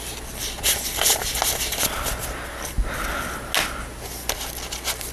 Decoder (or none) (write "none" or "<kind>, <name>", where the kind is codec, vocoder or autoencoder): none